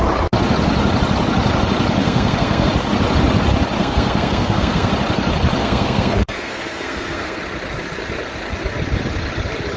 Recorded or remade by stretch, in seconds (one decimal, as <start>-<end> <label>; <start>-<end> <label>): 0.0-2.0 recorded; 2.0-2.7 remade; 2.7-3.8 recorded; 3.8-4.9 remade; 4.9-5.6 recorded; 5.6-7.4 remade; 7.4-9.8 recorded